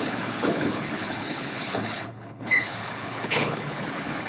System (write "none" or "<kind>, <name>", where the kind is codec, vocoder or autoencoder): codec, HILCodec